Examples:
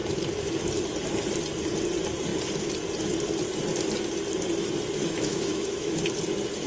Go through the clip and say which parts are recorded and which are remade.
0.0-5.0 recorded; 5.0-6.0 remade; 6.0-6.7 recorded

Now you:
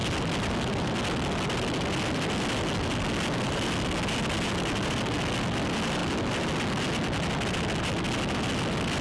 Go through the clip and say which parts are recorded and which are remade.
0.0-9.0 recorded

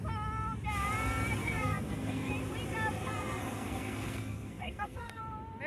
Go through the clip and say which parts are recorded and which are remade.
0.0-1.4 recorded; 1.4-2.3 remade; 2.3-3.0 recorded; 3.0-5.2 remade; 5.2-5.7 recorded

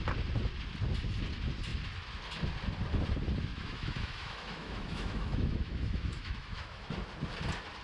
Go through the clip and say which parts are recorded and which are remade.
0.0-3.5 recorded; 3.5-6.9 remade; 6.9-7.8 recorded

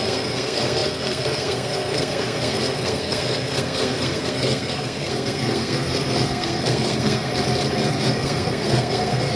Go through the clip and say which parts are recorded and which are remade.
0.0-7.3 remade; 7.3-7.9 recorded; 7.9-9.3 remade

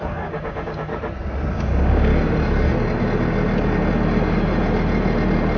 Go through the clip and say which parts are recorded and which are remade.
0.0-0.9 remade; 0.9-1.5 recorded; 1.5-2.1 remade; 2.1-5.6 recorded

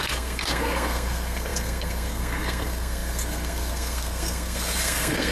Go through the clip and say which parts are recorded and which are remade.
0.0-5.3 remade